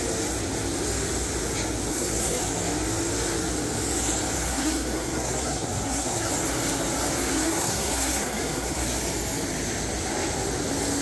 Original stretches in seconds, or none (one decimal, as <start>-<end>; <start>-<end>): 0.0-1.9; 2.4-4.5; 6.3-7.3; 9.0-11.0